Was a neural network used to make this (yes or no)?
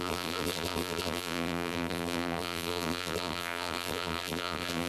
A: yes